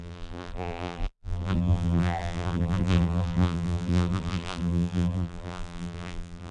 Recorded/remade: remade